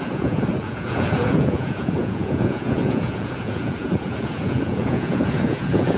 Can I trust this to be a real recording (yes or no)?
no